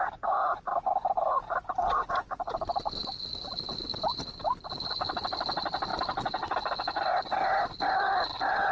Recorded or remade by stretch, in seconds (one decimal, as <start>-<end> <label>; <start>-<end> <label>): 0.0-8.7 recorded

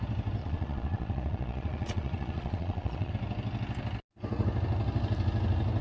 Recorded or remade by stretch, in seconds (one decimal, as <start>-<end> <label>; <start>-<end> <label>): 0.0-0.4 recorded; 0.4-3.1 remade; 3.1-5.8 recorded

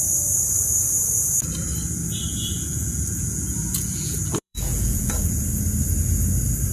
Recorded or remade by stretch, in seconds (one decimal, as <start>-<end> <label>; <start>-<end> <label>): 0.0-2.3 recorded; 2.3-5.4 remade; 5.4-6.7 recorded